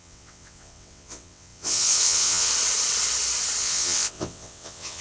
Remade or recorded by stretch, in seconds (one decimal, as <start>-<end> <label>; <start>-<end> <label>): 0.0-2.5 remade; 2.5-3.6 recorded; 3.6-5.0 remade